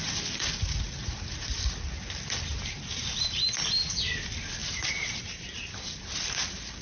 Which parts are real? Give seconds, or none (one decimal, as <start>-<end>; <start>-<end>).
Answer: 0.0-2.5; 3.5-4.6; 5.9-6.8